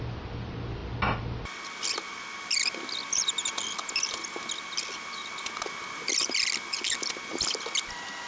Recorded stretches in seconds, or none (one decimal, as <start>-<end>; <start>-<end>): 0.0-8.3